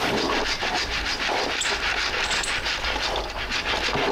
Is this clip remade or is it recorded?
recorded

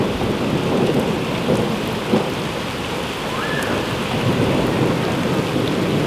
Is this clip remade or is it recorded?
recorded